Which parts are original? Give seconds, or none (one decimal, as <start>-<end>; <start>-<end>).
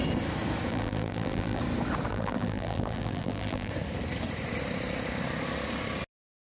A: 0.0-0.7; 1.6-2.1; 3.7-6.4